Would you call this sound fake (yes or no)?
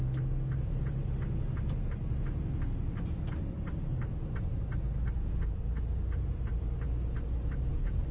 no